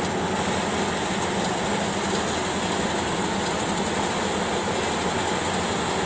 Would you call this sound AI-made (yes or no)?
no